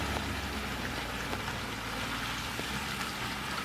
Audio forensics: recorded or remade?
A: recorded